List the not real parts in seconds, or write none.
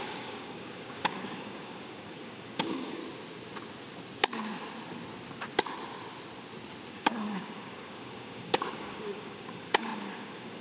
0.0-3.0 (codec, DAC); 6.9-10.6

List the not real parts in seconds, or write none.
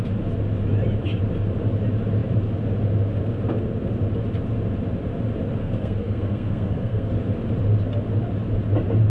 5.6-7.2 (codec, SNAC)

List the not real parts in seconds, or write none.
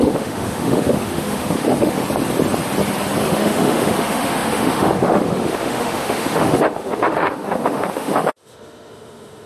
0.0-2.0 (autoencoder, DAC-VAE); 3.2-9.5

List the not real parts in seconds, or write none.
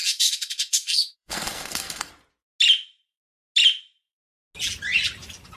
0.0-2.1 (codec, SNAC)